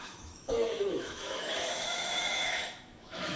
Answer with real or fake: fake